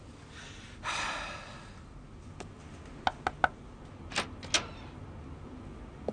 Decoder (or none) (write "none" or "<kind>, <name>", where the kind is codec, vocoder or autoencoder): none